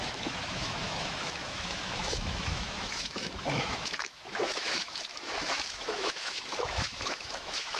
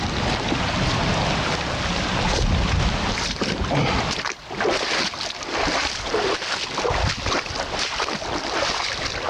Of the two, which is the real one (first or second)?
second